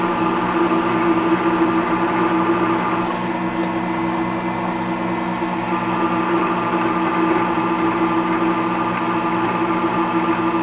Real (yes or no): yes